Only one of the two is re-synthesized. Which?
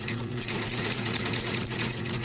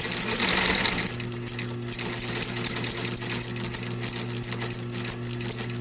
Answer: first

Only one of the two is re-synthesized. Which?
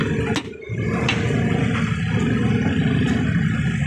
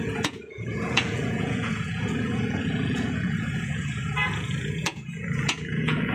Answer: second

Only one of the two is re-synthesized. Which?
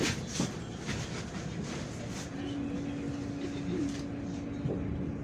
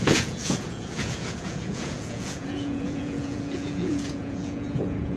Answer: second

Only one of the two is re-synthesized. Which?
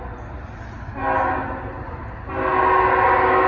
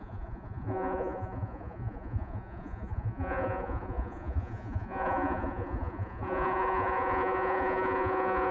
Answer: second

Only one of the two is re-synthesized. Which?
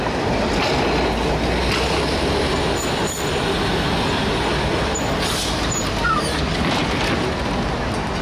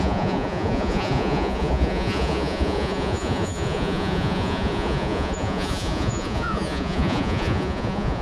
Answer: second